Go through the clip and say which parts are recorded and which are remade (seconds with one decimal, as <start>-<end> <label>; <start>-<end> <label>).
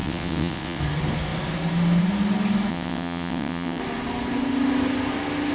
0.0-0.8 remade; 0.8-2.7 recorded; 2.7-3.8 remade; 3.8-5.5 recorded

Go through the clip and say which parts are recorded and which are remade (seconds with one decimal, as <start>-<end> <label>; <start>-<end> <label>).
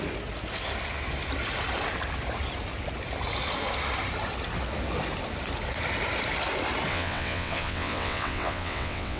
0.0-6.9 recorded; 6.9-9.2 remade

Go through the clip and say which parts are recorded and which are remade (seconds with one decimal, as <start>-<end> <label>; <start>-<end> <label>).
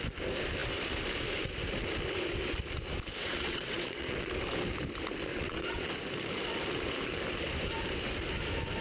0.0-3.2 recorded; 3.2-4.3 remade; 4.3-5.3 recorded; 5.3-5.9 remade; 5.9-8.8 recorded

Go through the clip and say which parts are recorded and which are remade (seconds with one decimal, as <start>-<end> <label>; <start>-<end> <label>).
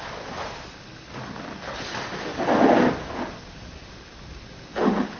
0.0-5.2 recorded